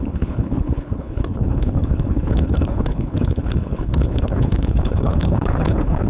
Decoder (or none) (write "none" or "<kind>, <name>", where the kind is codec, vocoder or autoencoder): codec, HILCodec